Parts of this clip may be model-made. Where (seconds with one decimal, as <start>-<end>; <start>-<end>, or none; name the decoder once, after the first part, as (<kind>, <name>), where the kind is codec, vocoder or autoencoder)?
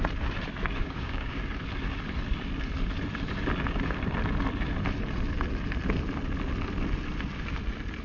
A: 0.8-1.4 (codec, DAC)